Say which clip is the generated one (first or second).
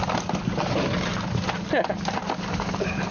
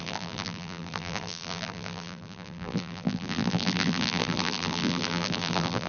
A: second